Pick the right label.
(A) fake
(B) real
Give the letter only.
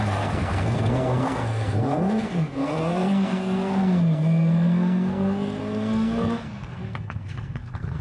A